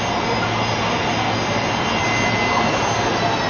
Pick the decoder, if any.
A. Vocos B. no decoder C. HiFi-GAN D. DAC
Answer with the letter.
B